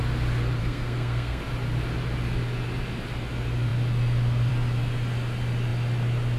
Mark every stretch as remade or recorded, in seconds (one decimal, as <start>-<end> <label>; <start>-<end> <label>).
0.0-0.6 recorded; 0.6-1.4 remade; 1.4-6.4 recorded